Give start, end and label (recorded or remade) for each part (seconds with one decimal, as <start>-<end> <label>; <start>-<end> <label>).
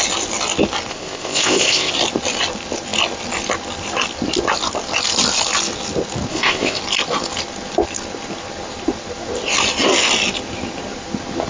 0.0-0.9 recorded; 0.9-1.9 remade; 1.9-6.3 recorded; 6.3-6.8 remade; 6.8-11.5 recorded